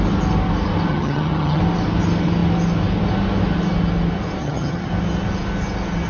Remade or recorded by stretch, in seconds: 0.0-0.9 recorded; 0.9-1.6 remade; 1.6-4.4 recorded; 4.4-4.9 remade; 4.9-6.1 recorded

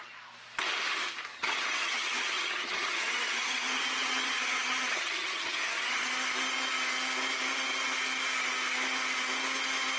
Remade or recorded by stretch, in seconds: 0.0-1.3 recorded; 1.3-6.1 remade; 6.1-10.0 recorded

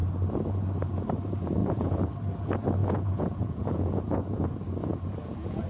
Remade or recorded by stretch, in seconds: 0.0-1.6 recorded; 1.6-2.1 remade; 2.1-2.8 recorded; 2.8-4.5 remade; 4.5-4.9 recorded; 4.9-5.7 remade

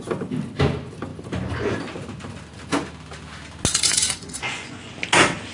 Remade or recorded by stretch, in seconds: 0.0-3.7 recorded; 3.7-4.9 remade; 4.9-5.5 recorded

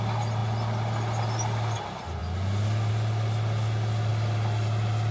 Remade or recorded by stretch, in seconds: 0.0-5.1 recorded

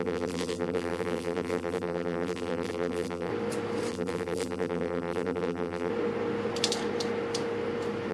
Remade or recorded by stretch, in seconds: 0.0-3.3 remade; 3.3-3.9 recorded; 3.9-5.9 remade; 5.9-8.1 recorded